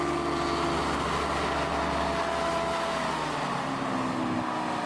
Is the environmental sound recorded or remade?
recorded